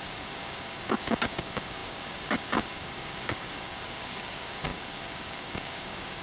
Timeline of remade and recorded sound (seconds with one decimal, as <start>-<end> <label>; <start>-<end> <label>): 0.0-6.2 remade

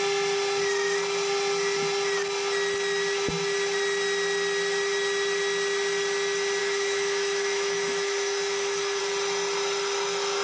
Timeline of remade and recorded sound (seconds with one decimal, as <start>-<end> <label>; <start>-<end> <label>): 0.0-6.6 recorded; 6.6-9.0 remade; 9.0-10.4 recorded

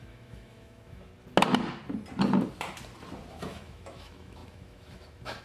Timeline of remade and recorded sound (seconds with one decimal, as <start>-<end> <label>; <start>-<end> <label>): 0.0-1.1 remade; 1.1-3.3 recorded; 3.3-5.4 remade